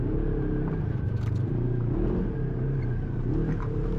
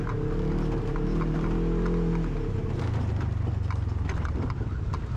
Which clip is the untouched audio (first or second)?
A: second